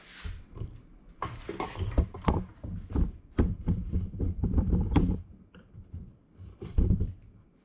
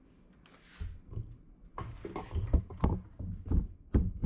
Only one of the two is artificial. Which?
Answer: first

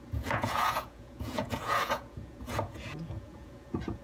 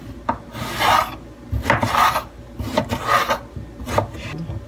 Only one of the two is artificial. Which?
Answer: first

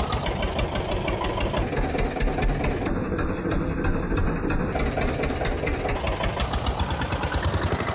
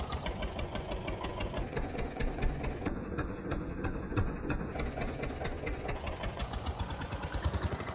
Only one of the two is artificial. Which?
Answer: second